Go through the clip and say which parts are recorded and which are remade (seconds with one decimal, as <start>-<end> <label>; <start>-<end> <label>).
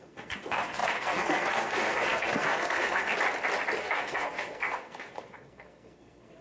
0.0-3.1 remade; 3.1-3.8 recorded; 3.8-6.4 remade